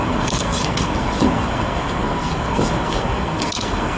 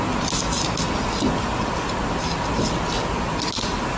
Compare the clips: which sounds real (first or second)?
second